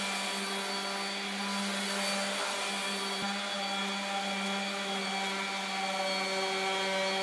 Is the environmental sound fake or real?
real